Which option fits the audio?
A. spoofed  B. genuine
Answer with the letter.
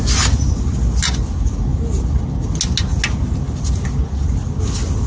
B